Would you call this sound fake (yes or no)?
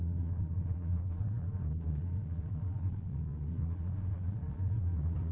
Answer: yes